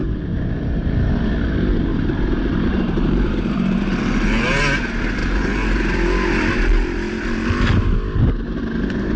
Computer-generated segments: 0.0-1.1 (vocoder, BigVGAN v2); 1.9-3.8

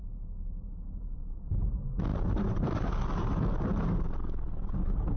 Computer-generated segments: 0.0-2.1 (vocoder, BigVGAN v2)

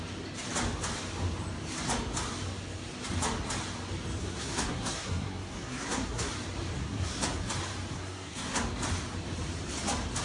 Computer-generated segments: 4.2-6.3 (codec, SNAC); 6.8-7.5; 7.9-8.6

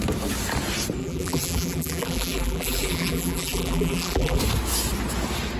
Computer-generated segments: 1.0-4.4 (vocoder, BigVGAN v2)

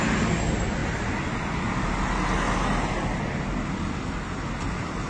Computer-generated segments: none

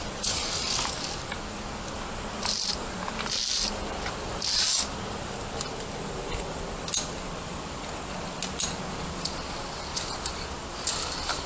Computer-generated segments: none